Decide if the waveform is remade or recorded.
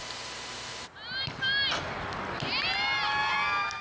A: recorded